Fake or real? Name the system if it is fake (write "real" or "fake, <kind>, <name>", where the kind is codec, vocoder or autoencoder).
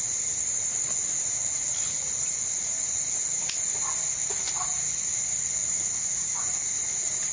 real